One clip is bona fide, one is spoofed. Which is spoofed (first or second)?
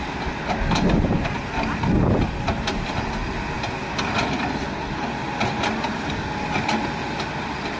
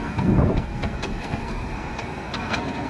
second